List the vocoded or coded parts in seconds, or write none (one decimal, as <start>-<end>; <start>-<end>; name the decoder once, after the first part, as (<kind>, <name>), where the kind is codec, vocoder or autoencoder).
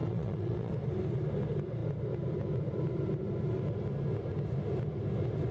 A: 0.0-0.7 (vocoder, WaveNeXt)